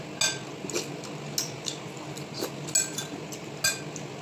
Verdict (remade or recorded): recorded